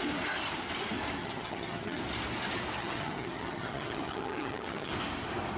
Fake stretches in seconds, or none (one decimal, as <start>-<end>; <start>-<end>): 1.2-2.0; 2.8-4.9